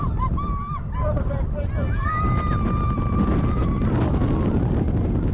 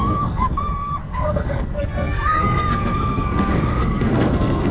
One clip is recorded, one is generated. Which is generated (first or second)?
second